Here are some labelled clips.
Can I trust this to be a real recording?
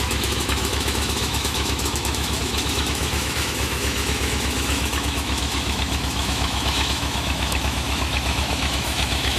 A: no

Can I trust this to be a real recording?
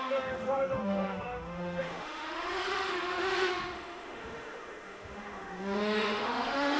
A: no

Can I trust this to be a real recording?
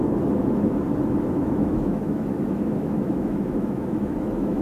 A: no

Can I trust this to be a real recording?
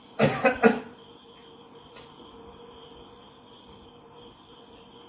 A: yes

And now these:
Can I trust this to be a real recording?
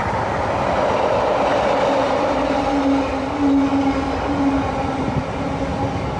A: yes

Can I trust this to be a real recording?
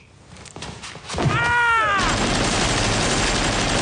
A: yes